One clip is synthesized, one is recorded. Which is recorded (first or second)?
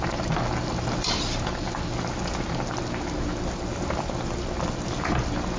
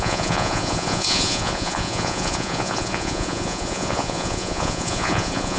first